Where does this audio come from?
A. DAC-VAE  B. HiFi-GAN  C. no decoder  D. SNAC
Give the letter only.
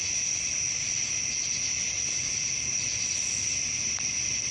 C